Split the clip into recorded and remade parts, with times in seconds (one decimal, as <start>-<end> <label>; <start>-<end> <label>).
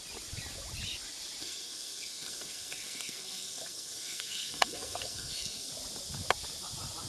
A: 0.0-1.4 recorded; 1.4-5.7 remade; 5.7-7.1 recorded